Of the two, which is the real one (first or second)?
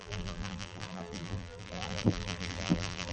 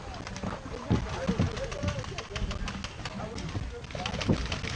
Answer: second